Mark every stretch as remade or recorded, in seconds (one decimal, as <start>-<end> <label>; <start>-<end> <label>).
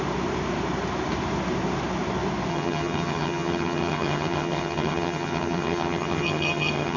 0.0-2.5 recorded; 2.5-7.0 remade